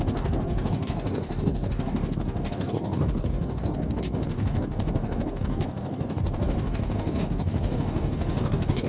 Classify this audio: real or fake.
fake